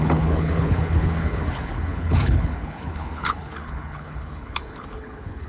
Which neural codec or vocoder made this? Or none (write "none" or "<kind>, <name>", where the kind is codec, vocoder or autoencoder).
codec, HILCodec